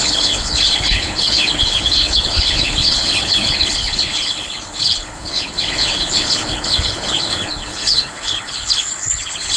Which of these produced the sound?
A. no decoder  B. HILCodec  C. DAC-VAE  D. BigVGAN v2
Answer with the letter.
B